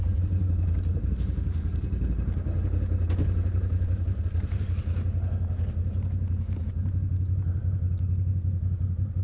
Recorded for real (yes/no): yes